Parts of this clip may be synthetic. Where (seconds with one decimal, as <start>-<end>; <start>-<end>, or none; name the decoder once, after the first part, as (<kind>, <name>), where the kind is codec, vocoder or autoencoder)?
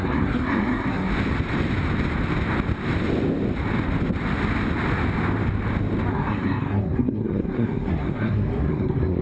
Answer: 0.0-1.1 (codec, SNAC); 6.1-9.2